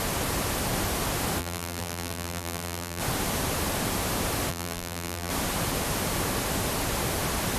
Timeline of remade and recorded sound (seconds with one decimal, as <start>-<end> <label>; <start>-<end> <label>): 0.0-1.4 recorded; 1.4-3.0 remade; 3.0-4.5 recorded; 4.5-5.3 remade; 5.3-7.6 recorded